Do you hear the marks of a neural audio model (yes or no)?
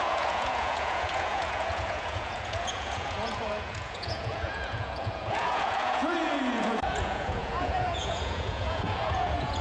yes